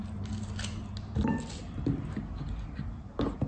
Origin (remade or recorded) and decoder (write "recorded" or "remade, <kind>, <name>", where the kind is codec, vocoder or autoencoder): recorded